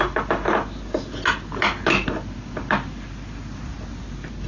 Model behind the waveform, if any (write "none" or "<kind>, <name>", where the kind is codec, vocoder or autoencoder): none